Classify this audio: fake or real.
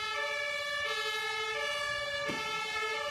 real